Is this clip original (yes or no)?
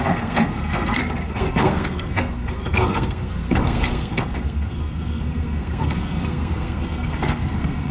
no